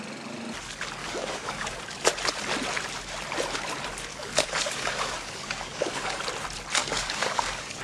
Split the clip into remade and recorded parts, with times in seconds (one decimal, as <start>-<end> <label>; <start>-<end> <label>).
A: 0.0-1.0 recorded; 1.0-1.8 remade; 1.8-4.1 recorded; 4.1-6.2 remade; 6.2-6.8 recorded; 6.8-7.8 remade